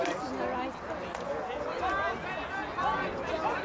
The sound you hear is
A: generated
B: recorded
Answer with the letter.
B